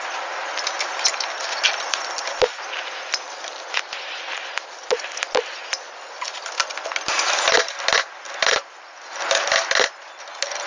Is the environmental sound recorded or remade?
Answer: recorded